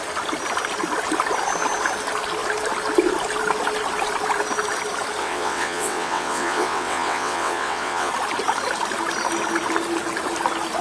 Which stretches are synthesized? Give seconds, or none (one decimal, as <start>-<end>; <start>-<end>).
5.2-8.1